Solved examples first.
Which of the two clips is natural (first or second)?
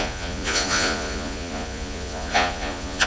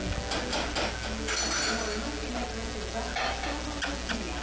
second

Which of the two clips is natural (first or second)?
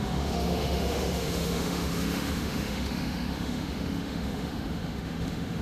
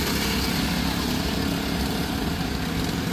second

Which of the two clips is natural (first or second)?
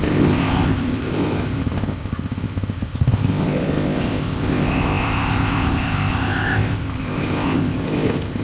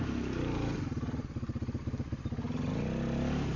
second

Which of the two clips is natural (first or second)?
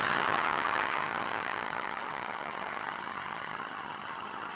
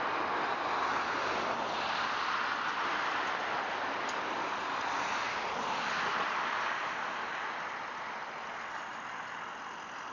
second